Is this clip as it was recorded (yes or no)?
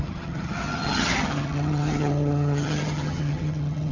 no